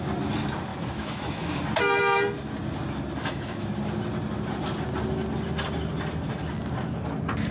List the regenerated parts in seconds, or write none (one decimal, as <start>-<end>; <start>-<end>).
0.7-1.6; 3.2-3.7